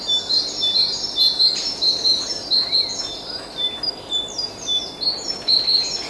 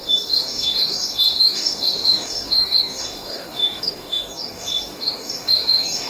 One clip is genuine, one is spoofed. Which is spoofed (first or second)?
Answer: second